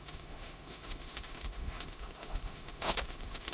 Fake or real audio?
fake